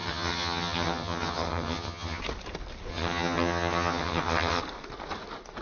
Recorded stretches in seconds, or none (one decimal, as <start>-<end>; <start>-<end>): 2.2-2.9; 4.6-5.6